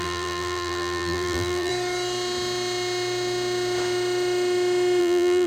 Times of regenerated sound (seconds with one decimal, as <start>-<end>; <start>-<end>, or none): 0.0-1.7; 5.0-5.5